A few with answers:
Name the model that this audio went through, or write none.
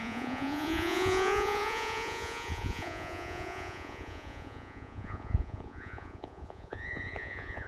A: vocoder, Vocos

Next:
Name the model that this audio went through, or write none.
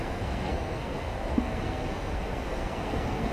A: codec, SNAC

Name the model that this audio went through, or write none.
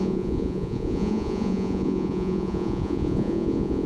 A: vocoder, Vocos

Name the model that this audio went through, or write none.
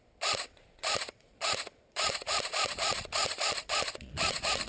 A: vocoder, Vocos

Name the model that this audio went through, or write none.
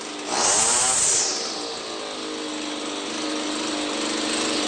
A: none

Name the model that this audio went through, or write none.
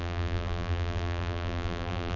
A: vocoder, BigVGAN v2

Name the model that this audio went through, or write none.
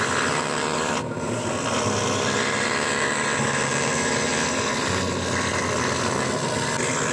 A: none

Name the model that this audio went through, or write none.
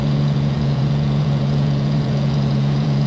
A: vocoder, Vocos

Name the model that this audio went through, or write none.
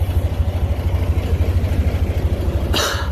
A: none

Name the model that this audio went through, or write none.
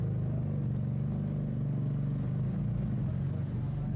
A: none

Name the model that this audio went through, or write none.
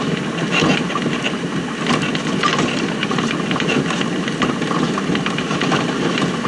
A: none